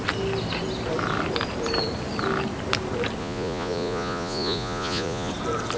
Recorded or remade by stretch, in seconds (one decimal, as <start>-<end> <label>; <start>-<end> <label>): 0.0-3.2 recorded; 3.2-5.3 remade; 5.3-5.8 recorded